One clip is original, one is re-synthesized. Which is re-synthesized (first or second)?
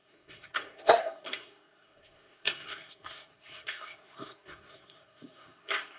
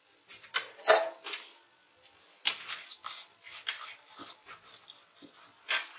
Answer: first